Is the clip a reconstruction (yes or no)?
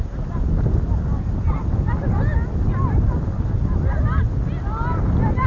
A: no